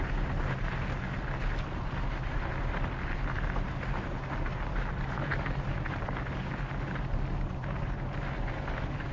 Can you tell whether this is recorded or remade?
recorded